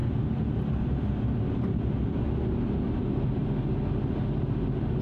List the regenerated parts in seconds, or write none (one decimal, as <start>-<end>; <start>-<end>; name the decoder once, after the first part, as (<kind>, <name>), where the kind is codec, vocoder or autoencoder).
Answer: none